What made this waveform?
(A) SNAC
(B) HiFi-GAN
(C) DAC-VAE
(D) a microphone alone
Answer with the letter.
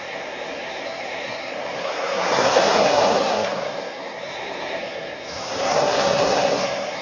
A